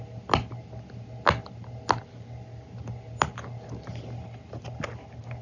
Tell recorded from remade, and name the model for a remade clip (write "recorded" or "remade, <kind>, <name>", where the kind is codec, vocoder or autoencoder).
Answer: recorded